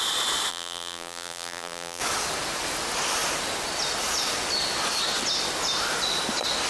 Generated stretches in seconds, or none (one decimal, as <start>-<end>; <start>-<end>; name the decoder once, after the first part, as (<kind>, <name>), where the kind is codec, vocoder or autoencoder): 0.5-2.0 (vocoder, BigVGAN v2)